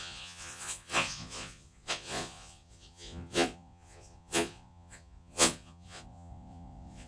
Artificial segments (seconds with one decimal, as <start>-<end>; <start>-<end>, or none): 0.0-7.1